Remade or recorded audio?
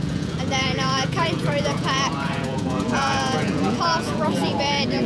remade